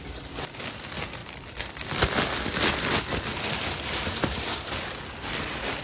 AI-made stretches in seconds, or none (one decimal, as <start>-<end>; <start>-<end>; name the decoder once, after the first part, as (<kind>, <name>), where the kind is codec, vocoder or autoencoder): none